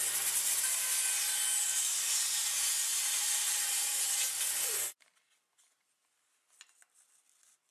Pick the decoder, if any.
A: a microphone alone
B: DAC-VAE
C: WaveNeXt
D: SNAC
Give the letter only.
A